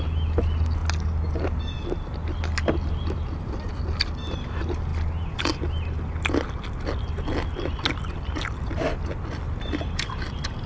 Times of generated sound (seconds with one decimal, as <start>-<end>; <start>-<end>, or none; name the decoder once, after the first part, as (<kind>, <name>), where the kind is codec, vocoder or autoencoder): none